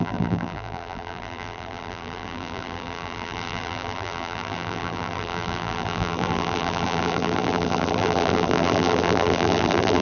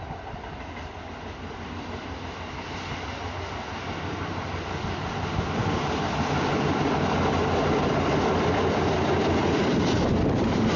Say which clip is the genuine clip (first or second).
second